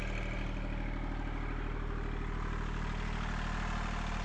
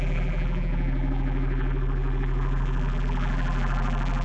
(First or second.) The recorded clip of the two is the first